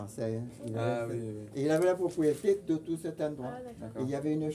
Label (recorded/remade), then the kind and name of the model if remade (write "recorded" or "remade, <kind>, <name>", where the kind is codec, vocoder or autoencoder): recorded